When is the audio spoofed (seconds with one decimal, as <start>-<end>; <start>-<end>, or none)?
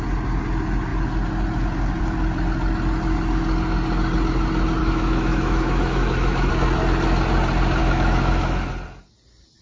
4.8-6.5; 7.8-8.7